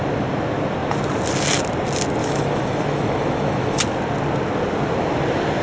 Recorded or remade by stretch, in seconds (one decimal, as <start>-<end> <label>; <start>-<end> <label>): 0.0-2.2 recorded; 2.2-3.8 remade; 3.8-5.6 recorded